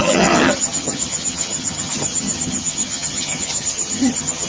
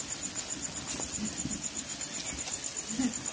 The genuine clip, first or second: second